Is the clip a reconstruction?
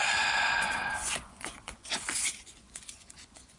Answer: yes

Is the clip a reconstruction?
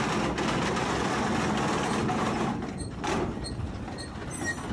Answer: no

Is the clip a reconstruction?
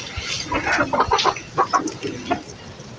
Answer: no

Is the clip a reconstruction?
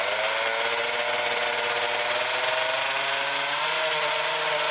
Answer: no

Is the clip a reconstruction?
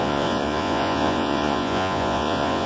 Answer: yes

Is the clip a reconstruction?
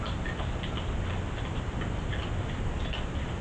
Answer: no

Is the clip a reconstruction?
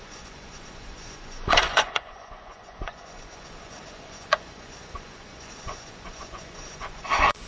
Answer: yes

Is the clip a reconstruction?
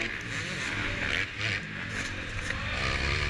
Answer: no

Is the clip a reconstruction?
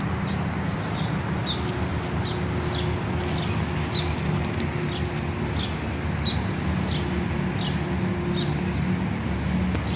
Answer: no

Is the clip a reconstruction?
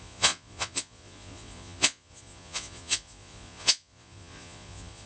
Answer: yes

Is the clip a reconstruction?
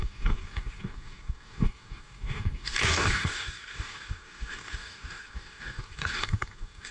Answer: yes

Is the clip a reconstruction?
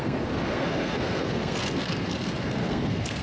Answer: yes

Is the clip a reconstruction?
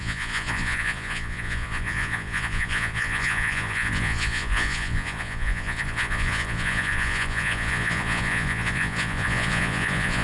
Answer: yes